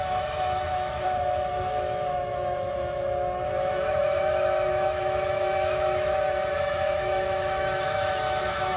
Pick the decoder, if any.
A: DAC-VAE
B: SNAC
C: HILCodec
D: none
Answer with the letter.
A